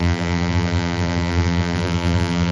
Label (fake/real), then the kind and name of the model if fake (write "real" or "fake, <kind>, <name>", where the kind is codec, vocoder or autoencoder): fake, vocoder, BigVGAN v2